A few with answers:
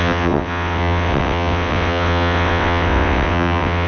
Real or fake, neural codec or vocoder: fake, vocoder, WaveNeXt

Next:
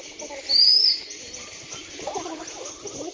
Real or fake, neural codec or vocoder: real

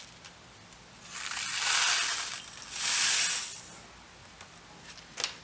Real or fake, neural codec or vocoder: real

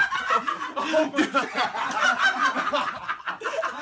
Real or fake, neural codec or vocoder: real